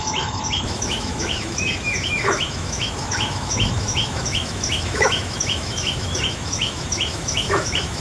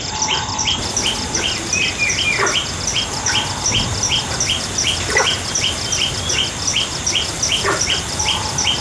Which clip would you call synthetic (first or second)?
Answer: first